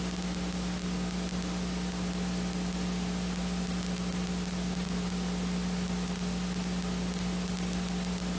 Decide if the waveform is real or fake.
real